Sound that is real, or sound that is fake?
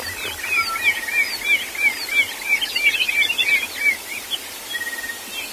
real